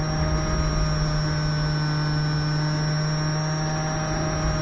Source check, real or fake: real